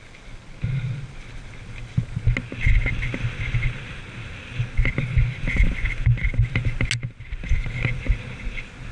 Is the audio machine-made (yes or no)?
no